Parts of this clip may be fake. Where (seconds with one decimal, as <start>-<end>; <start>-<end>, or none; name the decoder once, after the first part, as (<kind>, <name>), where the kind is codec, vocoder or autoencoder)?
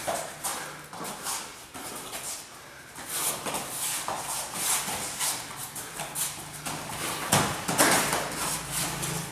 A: none